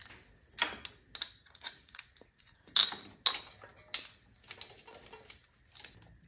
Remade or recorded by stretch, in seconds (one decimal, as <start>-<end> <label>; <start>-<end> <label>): 0.0-1.4 recorded; 1.4-2.7 remade; 2.7-6.3 recorded